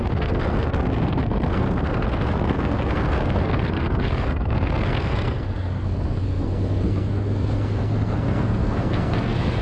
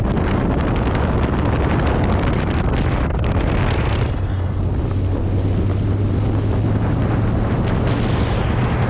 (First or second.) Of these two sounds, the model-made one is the first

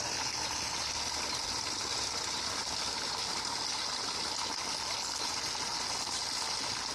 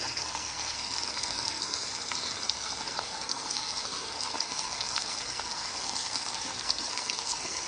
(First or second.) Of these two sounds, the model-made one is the second